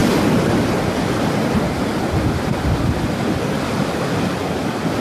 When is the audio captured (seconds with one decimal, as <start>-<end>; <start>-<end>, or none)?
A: 0.0-5.0